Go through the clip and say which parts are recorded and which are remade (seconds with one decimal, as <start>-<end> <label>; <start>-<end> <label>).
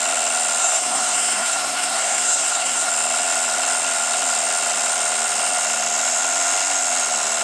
0.0-0.6 recorded; 0.6-2.9 remade; 2.9-7.4 recorded